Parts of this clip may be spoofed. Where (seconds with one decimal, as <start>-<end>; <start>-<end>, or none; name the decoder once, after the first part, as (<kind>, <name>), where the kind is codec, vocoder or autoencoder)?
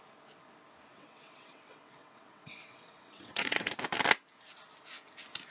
0.9-3.7 (vocoder, WaveNeXt)